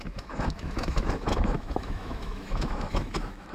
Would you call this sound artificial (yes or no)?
yes